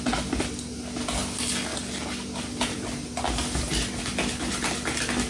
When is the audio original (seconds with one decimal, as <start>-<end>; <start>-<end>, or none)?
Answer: 0.0-5.3